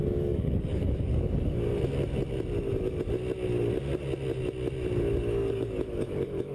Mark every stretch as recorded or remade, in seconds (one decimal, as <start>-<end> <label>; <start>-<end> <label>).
0.0-1.7 remade; 1.7-5.3 recorded; 5.3-6.5 remade